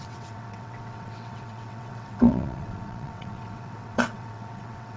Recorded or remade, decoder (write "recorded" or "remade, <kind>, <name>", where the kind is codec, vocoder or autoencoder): remade, vocoder, WaveNeXt